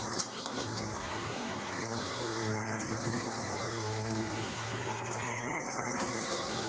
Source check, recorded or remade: remade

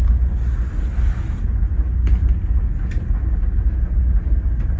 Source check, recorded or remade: recorded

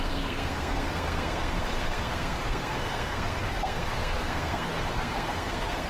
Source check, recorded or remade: remade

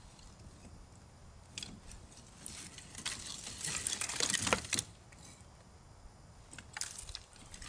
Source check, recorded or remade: recorded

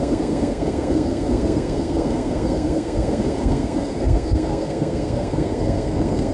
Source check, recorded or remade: remade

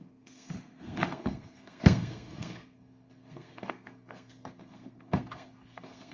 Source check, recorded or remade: remade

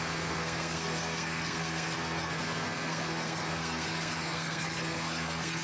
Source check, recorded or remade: remade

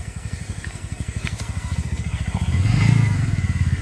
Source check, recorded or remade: remade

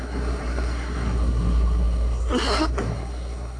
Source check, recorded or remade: remade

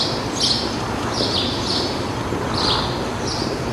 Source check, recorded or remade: recorded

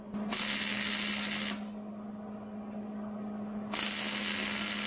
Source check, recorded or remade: recorded